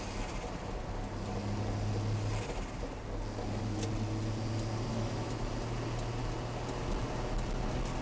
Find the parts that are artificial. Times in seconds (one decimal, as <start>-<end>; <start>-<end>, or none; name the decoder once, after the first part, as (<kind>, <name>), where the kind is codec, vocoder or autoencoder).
4.9-5.5 (autoencoder, DAC-VAE)